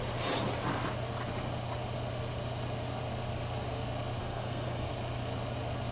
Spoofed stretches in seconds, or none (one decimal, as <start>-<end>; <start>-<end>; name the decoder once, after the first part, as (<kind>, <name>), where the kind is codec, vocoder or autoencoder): 4.2-4.9 (codec, SNAC)